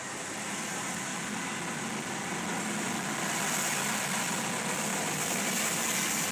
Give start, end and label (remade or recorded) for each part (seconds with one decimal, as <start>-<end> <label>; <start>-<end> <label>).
0.0-4.9 recorded; 4.9-5.8 remade; 5.8-6.3 recorded